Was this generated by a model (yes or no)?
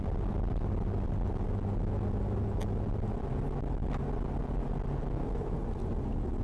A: no